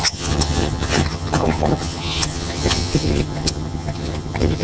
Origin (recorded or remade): remade